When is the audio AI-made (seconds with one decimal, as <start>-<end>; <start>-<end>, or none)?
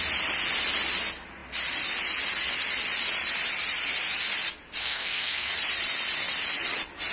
4.8-5.5